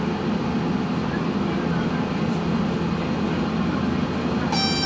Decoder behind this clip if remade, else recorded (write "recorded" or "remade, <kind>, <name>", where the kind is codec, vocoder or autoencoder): recorded